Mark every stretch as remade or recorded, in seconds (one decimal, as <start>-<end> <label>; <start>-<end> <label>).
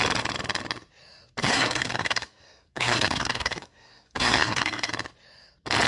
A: 0.0-1.4 recorded; 1.4-4.9 remade; 4.9-5.9 recorded